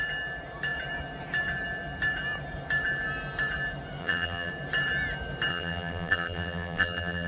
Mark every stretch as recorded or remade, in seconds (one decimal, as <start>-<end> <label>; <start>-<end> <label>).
0.0-4.0 recorded; 4.0-4.5 remade; 4.5-5.5 recorded; 5.5-7.3 remade